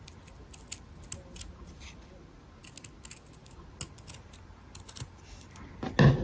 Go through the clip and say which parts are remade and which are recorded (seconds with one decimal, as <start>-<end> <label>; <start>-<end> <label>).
0.0-6.2 recorded